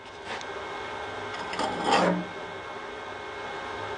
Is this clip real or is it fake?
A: real